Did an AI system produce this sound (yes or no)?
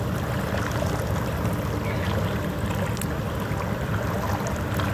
no